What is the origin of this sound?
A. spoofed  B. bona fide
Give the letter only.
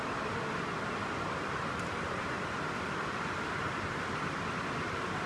B